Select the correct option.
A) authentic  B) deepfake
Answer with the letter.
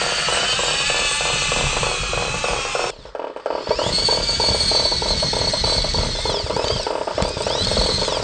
A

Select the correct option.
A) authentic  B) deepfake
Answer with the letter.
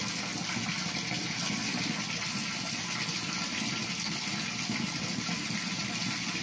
A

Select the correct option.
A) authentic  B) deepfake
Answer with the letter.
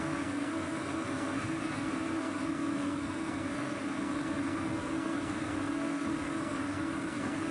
B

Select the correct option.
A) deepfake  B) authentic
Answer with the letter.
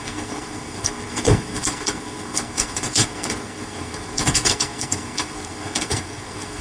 A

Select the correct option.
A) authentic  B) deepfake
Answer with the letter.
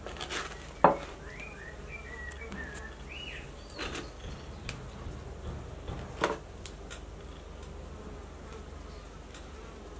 A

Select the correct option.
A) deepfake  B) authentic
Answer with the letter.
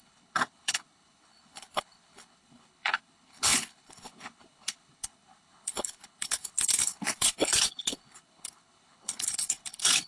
A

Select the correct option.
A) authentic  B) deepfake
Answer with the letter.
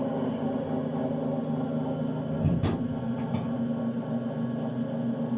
A